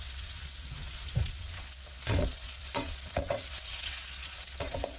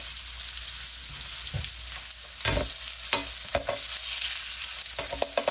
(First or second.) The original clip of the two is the second